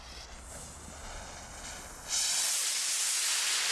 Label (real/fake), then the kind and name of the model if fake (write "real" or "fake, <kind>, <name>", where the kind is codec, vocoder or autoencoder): real